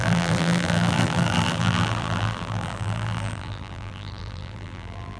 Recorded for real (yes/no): no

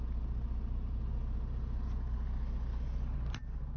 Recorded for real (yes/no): yes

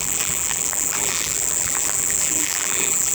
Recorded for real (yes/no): no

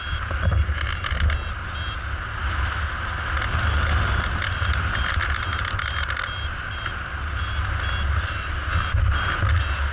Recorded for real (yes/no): yes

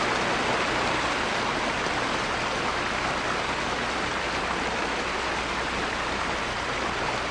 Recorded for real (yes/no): yes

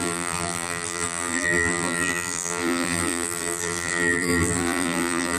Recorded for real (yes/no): no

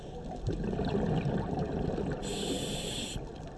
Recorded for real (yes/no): yes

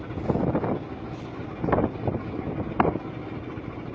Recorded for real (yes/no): yes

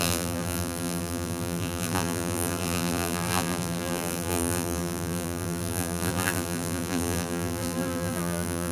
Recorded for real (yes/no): no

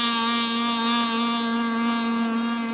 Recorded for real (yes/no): yes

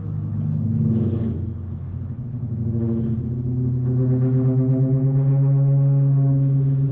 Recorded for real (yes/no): yes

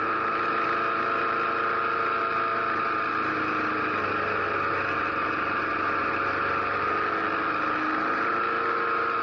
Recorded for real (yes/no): yes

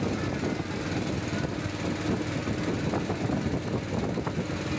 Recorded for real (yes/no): yes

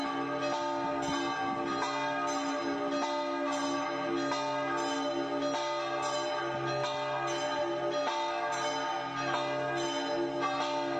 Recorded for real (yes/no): yes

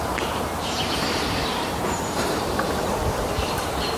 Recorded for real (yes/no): no